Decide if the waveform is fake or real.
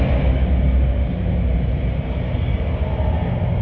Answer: real